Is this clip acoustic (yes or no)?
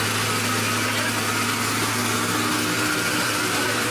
yes